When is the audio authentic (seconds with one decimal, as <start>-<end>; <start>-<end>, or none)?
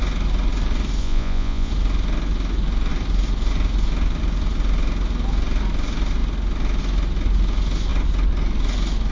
0.0-1.0; 1.7-9.1